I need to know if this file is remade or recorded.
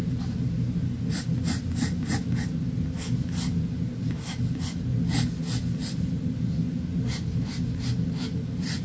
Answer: recorded